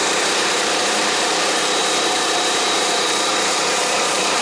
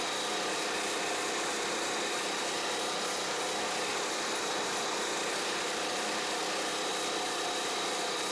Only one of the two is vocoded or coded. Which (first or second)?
first